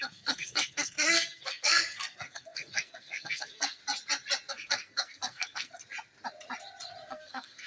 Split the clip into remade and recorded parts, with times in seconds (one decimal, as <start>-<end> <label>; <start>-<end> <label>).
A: 0.0-3.8 remade; 3.8-4.5 recorded; 4.5-5.8 remade; 5.8-7.1 recorded; 7.1-7.7 remade